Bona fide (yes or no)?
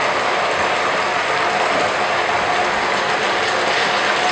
yes